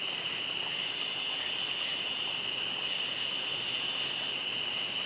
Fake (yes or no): no